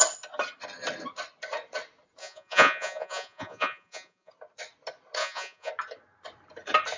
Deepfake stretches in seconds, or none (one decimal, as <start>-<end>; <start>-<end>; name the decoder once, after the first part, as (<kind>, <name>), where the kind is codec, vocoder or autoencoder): 2.2-4.3 (vocoder, Vocos); 5.2-5.7